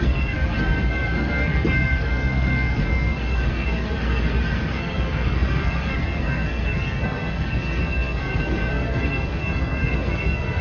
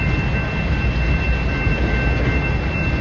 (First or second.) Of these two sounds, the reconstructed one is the first